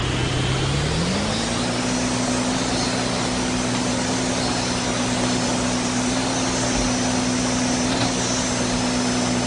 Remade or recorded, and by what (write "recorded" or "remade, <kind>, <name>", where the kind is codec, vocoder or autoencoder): recorded